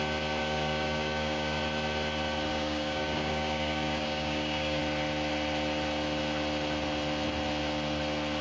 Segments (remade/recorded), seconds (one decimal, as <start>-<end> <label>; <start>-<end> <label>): 0.0-0.4 recorded; 0.4-1.6 remade; 1.6-2.5 recorded; 2.5-4.8 remade; 4.8-8.4 recorded